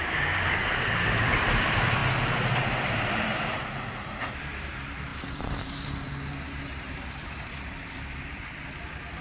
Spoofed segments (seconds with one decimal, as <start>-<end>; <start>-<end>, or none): 0.0-2.0; 2.8-9.2